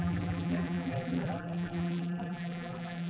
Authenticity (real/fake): fake